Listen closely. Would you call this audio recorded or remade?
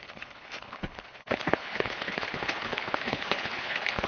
remade